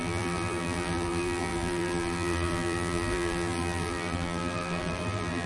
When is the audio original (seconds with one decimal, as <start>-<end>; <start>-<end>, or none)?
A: none